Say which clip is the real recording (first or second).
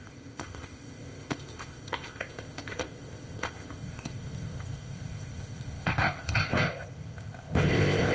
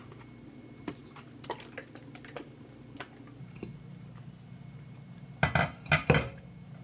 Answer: second